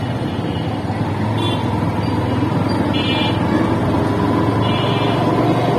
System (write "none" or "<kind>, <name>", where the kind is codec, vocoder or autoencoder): none